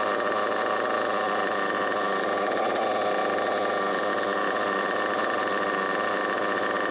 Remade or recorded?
recorded